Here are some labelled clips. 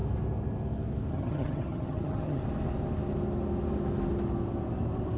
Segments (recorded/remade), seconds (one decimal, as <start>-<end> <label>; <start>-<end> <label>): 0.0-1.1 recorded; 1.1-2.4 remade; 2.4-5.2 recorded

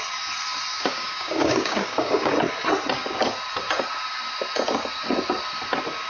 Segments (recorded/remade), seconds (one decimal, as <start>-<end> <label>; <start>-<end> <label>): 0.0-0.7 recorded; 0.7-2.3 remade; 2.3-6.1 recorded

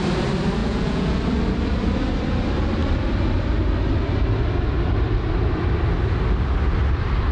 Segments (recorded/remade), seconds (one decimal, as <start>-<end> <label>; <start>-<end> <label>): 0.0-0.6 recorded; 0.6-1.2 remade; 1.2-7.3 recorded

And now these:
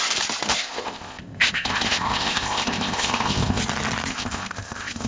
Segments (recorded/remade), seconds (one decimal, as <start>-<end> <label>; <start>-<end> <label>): 0.0-0.5 recorded; 0.5-3.6 remade; 3.6-4.1 recorded; 4.1-5.1 remade